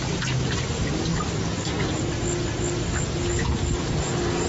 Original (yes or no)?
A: yes